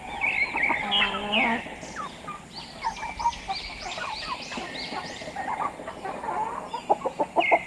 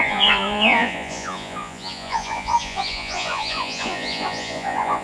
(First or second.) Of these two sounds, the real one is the first